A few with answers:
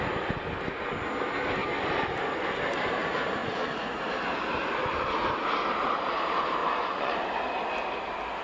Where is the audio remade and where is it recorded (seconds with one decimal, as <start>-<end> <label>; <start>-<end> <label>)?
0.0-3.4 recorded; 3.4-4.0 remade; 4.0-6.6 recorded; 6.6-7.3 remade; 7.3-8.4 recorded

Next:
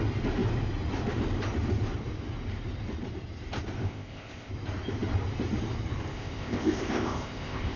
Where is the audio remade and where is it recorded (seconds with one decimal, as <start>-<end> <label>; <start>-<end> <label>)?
0.0-3.8 recorded; 3.8-4.5 remade; 4.5-6.1 recorded; 6.1-7.8 remade

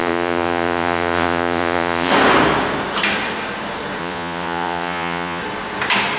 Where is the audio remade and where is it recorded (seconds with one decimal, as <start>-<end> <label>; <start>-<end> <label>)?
0.0-2.1 remade; 2.1-4.0 recorded; 4.0-5.4 remade; 5.4-6.2 recorded

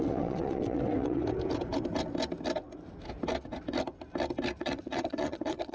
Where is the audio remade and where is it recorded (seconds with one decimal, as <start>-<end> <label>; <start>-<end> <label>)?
0.0-1.2 remade; 1.2-4.6 recorded; 4.6-5.7 remade